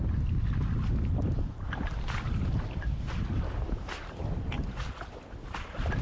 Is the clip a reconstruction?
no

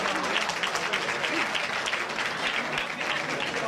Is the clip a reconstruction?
no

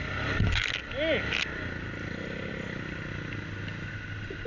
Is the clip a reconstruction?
no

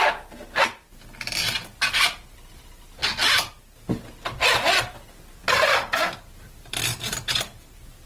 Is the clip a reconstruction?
no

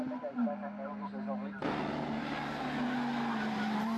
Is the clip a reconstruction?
no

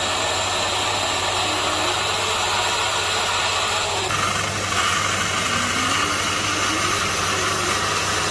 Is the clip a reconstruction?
no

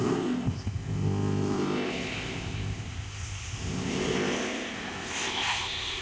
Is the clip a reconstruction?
yes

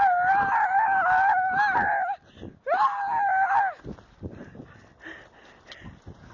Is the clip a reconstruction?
no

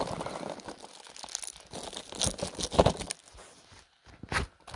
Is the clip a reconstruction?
no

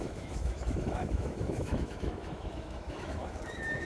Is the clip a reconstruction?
yes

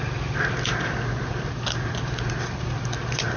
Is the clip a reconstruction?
no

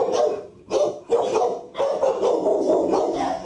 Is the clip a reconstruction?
no